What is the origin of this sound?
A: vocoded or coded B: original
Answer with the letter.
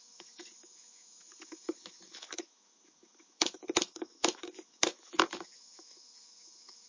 A